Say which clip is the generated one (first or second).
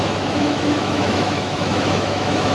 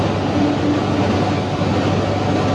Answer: first